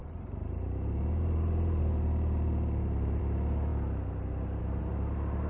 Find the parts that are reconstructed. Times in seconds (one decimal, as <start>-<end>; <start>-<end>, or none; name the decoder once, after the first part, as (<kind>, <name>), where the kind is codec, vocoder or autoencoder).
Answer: 0.0-3.2 (vocoder, BigVGAN v2)